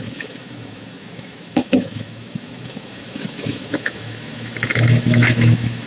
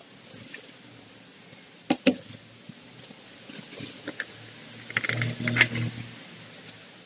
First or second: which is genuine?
second